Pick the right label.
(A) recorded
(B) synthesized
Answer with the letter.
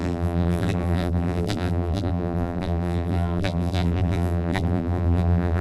B